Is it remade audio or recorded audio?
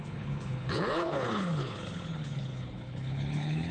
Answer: remade